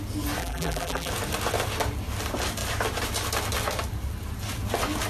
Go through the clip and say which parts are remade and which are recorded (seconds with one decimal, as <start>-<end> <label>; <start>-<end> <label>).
0.0-0.4 recorded; 0.4-1.1 remade; 1.1-5.1 recorded